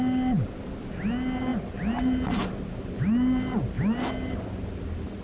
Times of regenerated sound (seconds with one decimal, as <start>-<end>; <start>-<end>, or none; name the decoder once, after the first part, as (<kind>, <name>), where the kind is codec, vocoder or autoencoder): none